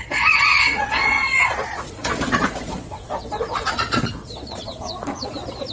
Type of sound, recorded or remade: remade